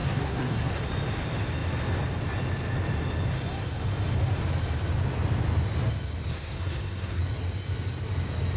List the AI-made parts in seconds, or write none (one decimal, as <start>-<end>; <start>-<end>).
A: 0.0-0.8; 6.3-7.2